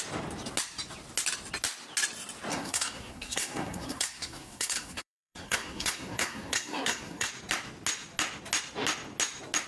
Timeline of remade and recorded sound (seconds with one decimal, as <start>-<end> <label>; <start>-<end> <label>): 0.0-2.5 recorded; 2.5-7.3 remade; 7.3-9.7 recorded